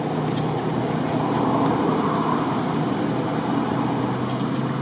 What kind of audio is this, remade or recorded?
recorded